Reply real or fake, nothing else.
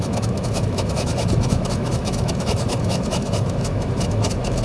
fake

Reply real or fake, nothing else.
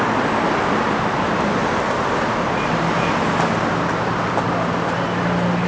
real